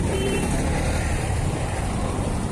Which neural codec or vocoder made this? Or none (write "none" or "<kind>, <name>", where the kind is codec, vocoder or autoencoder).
vocoder, BigVGAN v2